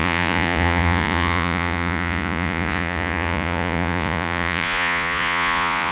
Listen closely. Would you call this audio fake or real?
fake